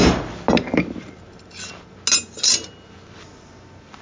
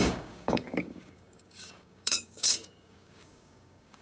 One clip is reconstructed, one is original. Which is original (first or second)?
first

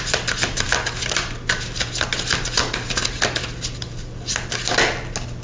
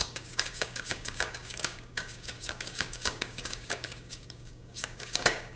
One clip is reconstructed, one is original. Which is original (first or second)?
first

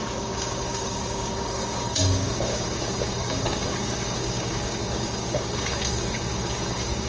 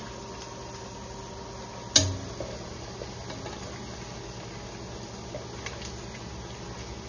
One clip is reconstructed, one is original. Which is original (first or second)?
second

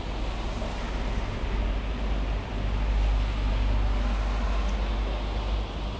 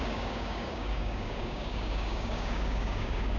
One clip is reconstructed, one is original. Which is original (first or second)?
first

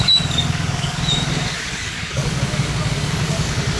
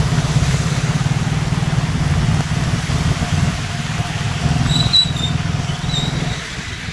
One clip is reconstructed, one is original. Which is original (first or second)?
second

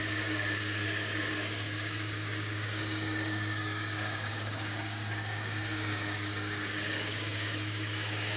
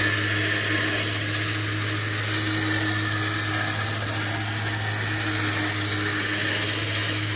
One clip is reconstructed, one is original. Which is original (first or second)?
second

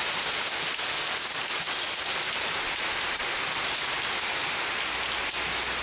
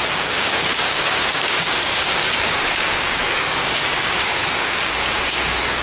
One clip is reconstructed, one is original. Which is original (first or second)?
first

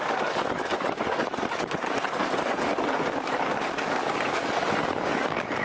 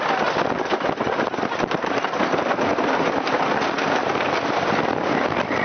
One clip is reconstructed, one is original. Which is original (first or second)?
second